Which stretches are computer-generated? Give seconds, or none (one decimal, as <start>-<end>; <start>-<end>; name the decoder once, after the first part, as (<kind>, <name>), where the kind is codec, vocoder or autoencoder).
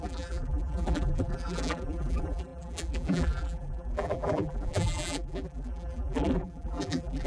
0.0-7.3 (vocoder, BigVGAN v2)